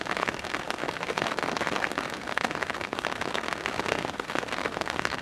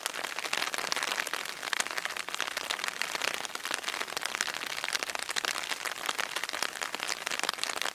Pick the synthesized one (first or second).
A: first